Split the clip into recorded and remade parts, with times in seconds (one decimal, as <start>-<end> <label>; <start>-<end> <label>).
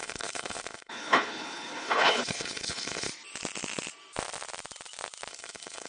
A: 0.0-3.1 remade; 3.1-5.3 recorded; 5.3-5.9 remade